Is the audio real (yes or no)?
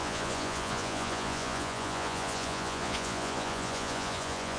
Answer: no